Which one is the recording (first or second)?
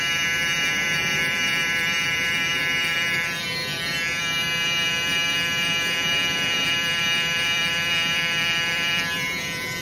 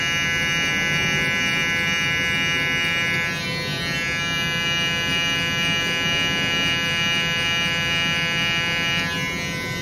second